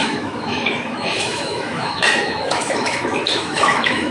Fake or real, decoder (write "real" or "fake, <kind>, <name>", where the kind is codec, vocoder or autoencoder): fake, autoencoder, DAC-VAE